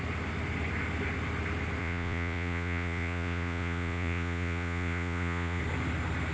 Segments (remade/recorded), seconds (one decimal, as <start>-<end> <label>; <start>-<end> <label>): 0.0-1.8 recorded; 1.8-5.6 remade; 5.6-6.3 recorded